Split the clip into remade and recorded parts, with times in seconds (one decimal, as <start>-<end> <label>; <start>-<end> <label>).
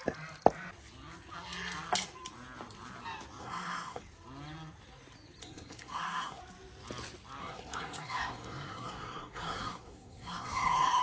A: 0.0-3.4 recorded; 3.4-4.0 remade; 4.0-5.4 recorded; 5.4-6.4 remade; 6.4-7.4 recorded; 7.4-11.0 remade